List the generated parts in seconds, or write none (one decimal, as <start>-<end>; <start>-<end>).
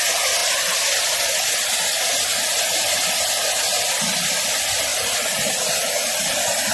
4.9-5.9